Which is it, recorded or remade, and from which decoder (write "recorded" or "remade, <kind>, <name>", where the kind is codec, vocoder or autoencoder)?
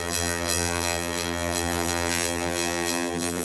remade, vocoder, BigVGAN v2